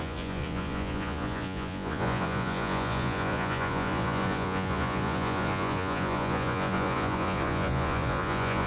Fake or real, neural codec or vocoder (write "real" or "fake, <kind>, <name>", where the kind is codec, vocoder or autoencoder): fake, vocoder, Vocos